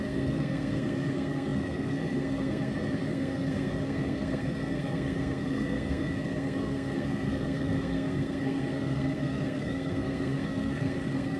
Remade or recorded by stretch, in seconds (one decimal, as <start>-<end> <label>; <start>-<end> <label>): 0.0-11.4 remade

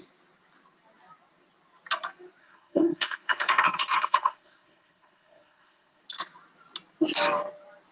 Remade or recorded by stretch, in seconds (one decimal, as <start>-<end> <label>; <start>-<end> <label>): 0.0-2.4 recorded; 2.4-6.0 remade; 6.0-7.9 recorded

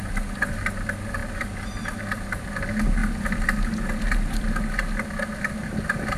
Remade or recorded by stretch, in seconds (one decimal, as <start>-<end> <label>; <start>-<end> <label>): 0.0-6.2 recorded

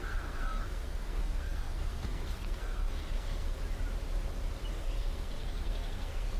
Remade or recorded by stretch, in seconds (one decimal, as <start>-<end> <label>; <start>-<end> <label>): 0.0-3.6 remade; 3.6-4.7 recorded; 4.7-6.4 remade

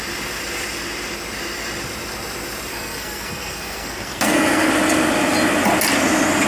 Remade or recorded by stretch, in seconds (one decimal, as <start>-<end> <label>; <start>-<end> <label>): 0.0-2.7 recorded; 2.7-4.7 remade; 4.7-6.5 recorded

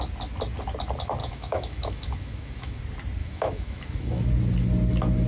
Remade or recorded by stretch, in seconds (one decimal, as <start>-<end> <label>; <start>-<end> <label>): 0.0-1.2 recorded; 1.2-2.8 remade; 2.8-3.2 recorded; 3.2-4.2 remade; 4.2-5.3 recorded

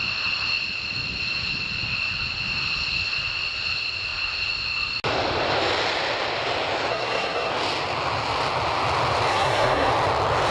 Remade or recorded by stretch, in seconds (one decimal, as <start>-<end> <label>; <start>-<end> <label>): 0.0-6.9 recorded; 6.9-7.5 remade; 7.5-9.3 recorded; 9.3-9.9 remade; 9.9-10.5 recorded

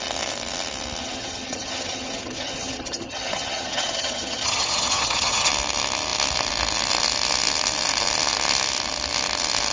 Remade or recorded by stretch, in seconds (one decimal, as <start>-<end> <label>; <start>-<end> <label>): 0.0-1.0 recorded; 1.0-5.5 remade; 5.5-9.7 recorded